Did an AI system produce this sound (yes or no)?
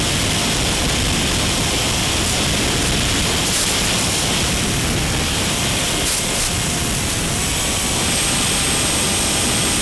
no